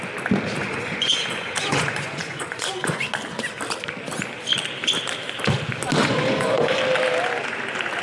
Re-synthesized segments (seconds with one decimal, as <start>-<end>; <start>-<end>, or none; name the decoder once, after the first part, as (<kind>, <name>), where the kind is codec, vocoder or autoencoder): 0.6-3.1 (vocoder, Vocos); 6.0-6.8